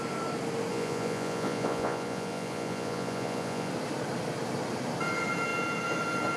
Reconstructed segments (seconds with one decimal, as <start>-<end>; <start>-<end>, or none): 0.7-3.7